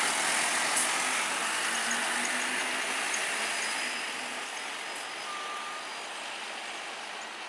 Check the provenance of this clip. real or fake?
real